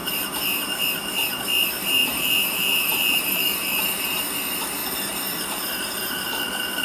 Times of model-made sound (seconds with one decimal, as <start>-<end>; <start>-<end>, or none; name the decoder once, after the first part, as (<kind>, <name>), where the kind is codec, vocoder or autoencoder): 1.8-4.2 (vocoder, BigVGAN v2); 4.8-6.3